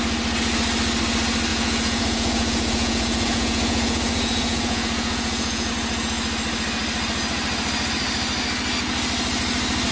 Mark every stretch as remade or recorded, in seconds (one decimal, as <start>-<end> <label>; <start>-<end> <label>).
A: 0.0-1.5 recorded; 1.5-5.7 remade; 5.7-9.9 recorded